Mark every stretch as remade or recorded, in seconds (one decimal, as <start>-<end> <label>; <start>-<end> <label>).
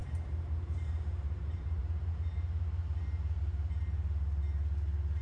0.0-1.8 remade; 1.8-5.2 recorded